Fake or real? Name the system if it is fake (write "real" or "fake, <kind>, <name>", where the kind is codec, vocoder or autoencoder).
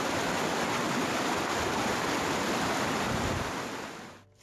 real